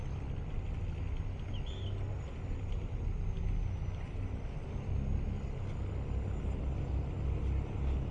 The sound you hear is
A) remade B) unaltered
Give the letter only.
B